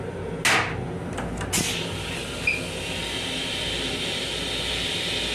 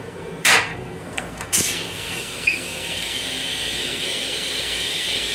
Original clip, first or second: first